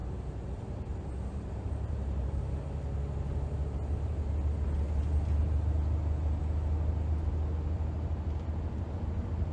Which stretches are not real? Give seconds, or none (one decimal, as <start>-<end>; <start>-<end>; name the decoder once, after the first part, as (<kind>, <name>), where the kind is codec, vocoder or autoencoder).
0.0-2.4 (vocoder, BigVGAN v2)